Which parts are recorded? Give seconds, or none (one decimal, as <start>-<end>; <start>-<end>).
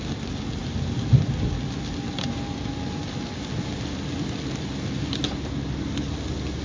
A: 0.0-6.6